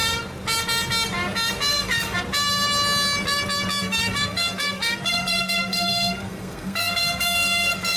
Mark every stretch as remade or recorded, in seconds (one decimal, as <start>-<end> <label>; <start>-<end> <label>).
0.0-1.7 recorded; 1.7-2.2 remade; 2.2-3.8 recorded; 3.8-8.0 remade